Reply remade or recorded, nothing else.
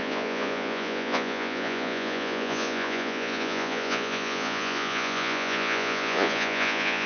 remade